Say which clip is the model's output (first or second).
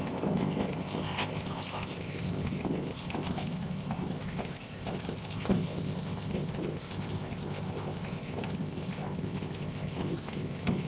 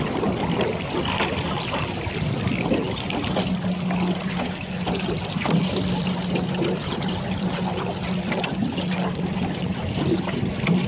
first